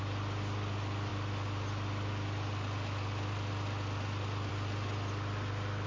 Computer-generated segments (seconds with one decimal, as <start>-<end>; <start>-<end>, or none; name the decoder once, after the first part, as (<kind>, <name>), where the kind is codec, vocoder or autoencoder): none